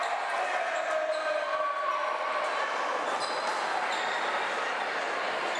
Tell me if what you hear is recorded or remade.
recorded